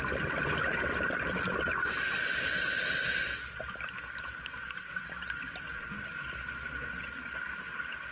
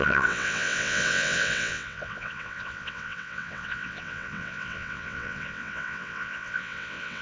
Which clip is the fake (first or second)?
second